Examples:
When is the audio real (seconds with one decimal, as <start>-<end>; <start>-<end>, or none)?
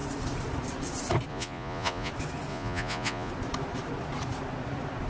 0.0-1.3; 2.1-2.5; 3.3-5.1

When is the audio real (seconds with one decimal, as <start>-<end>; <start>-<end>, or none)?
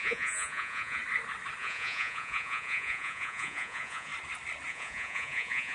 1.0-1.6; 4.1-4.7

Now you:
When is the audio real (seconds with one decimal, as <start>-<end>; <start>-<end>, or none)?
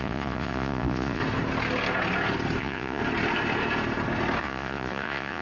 1.2-2.6; 3.0-4.4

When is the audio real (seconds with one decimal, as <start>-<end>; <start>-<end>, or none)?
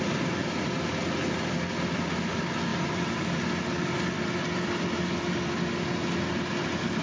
0.0-7.0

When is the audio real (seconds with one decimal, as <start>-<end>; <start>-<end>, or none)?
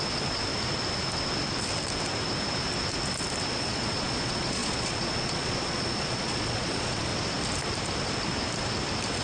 0.5-3.5; 7.1-9.2